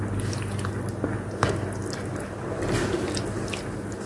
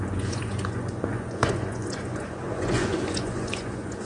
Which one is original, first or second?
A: first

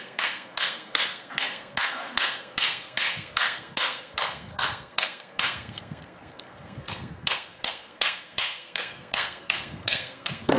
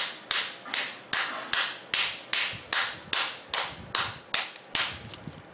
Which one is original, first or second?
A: second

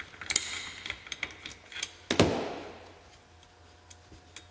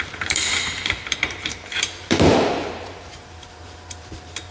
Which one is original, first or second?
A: first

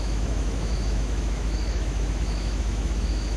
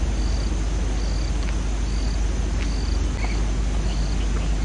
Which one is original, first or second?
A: second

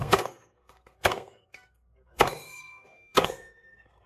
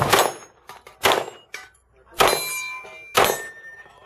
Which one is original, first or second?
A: second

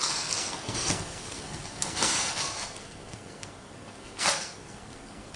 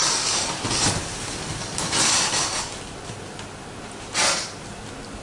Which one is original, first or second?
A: second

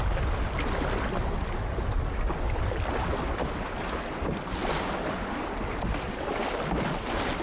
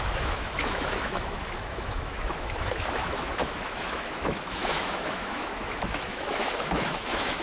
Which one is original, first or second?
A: first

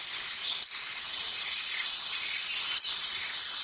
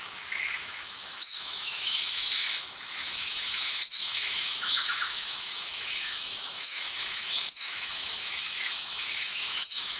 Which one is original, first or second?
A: first